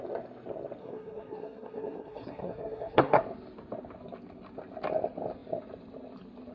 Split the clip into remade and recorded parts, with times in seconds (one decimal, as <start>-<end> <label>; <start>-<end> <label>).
0.0-0.8 recorded; 0.8-3.2 remade; 3.2-6.5 recorded